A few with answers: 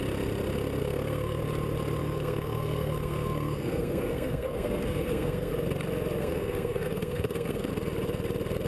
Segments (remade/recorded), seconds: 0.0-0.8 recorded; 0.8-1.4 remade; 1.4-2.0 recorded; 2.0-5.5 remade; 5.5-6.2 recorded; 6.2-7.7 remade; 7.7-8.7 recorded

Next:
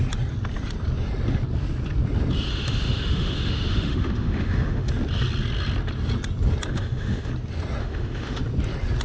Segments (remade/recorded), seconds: 0.0-2.5 recorded; 2.5-4.9 remade; 4.9-6.7 recorded; 6.7-7.3 remade; 7.3-7.8 recorded; 7.8-8.4 remade; 8.4-9.0 recorded

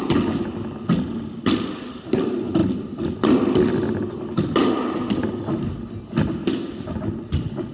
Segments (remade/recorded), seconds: 0.0-7.7 recorded

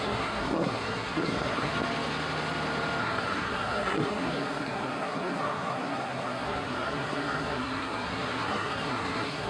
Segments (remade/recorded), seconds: 0.0-1.7 remade; 1.7-3.0 recorded; 3.0-9.5 remade

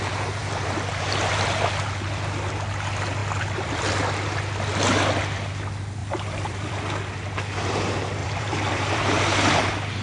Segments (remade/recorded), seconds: 0.0-3.2 recorded; 3.2-3.9 remade; 3.9-6.0 recorded; 6.0-6.8 remade; 6.8-8.2 recorded; 8.2-9.6 remade; 9.6-10.0 recorded

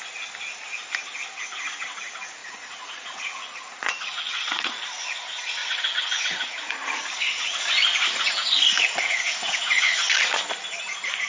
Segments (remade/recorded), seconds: 0.0-2.4 recorded; 2.4-4.8 remade; 4.8-5.6 recorded; 5.6-10.4 remade; 10.4-11.3 recorded

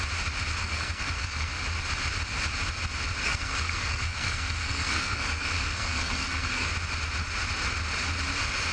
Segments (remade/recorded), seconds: 0.0-0.6 recorded; 0.6-1.6 remade; 1.6-3.2 recorded; 3.2-6.7 remade; 6.7-8.7 recorded